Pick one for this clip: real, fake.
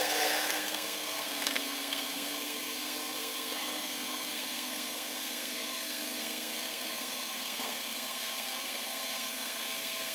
fake